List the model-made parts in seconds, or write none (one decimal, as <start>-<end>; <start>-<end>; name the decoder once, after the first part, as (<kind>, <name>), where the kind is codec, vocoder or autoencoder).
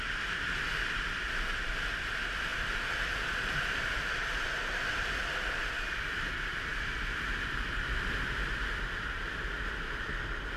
none